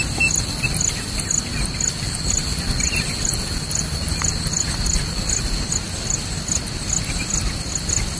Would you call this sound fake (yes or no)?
no